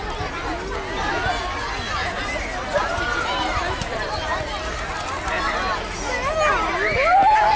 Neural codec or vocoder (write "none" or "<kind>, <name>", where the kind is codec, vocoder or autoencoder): none